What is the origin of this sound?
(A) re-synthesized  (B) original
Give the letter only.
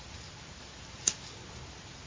A